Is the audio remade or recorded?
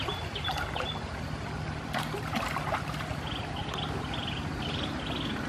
recorded